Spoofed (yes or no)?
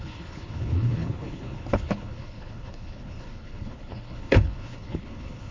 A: yes